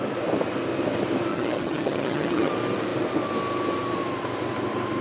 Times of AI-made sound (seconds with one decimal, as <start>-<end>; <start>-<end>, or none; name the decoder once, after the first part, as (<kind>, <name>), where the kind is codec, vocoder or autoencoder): 1.3-2.5 (vocoder, HiFi-GAN)